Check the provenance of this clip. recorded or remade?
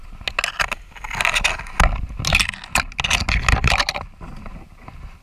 recorded